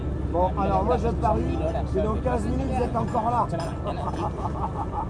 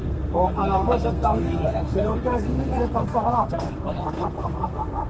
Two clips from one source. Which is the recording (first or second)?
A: first